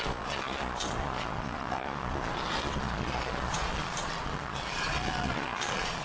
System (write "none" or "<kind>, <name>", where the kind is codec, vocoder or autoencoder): vocoder, Vocos